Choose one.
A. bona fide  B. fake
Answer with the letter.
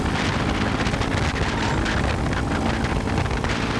A